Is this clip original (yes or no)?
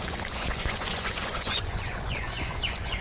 no